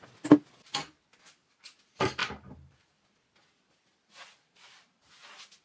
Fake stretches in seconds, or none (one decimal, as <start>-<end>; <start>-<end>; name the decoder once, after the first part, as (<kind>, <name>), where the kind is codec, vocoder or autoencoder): 2.2-2.9 (vocoder, BigVGAN v2)